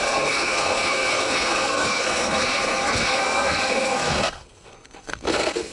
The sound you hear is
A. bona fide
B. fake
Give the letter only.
B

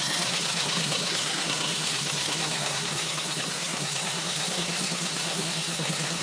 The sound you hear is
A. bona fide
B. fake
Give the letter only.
B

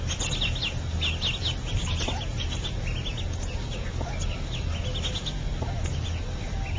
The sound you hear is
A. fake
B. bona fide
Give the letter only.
B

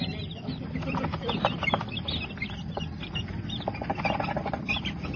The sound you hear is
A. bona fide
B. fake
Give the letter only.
A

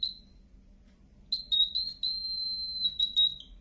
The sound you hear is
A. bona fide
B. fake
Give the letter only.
A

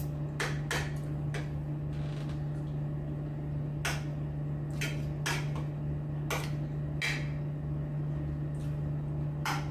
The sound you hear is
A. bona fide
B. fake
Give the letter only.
A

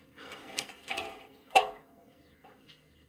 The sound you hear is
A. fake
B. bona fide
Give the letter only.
A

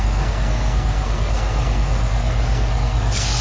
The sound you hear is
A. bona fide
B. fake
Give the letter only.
B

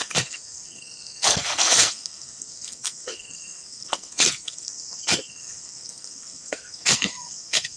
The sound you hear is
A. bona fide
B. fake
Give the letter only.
B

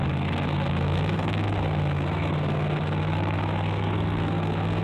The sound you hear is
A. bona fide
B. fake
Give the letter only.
B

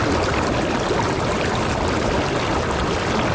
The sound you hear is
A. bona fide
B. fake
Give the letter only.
A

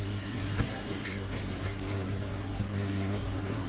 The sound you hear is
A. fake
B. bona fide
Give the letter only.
A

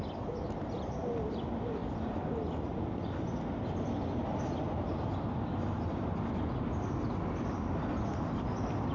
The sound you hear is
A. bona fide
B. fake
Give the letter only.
A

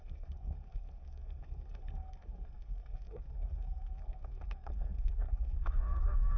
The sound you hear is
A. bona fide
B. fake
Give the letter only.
B